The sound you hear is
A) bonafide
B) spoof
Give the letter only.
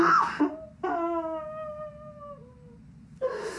A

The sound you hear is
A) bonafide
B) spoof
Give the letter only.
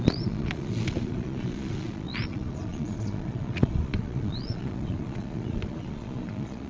B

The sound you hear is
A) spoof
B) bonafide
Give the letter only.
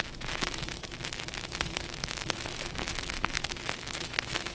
A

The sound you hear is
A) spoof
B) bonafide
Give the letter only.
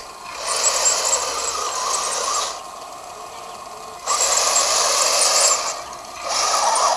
B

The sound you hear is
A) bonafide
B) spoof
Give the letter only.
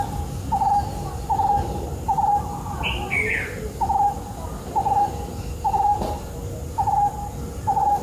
A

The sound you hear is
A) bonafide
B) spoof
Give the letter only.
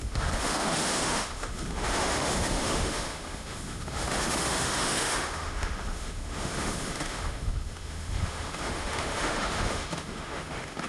B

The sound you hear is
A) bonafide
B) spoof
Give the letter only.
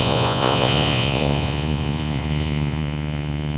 B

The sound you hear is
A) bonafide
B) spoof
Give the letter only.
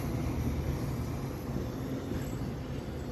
A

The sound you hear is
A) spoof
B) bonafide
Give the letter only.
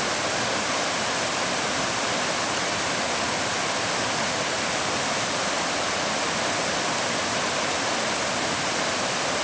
B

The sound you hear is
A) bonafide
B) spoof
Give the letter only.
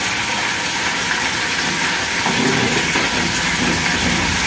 A